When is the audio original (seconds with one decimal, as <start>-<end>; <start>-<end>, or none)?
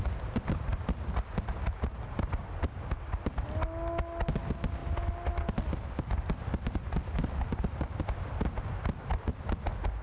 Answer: 0.0-10.0